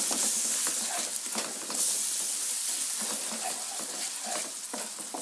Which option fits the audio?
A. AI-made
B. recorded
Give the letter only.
B